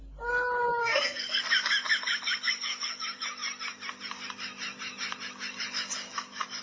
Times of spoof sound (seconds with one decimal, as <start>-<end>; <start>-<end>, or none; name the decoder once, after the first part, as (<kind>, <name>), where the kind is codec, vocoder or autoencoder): 0.8-1.4 (codec, SNAC)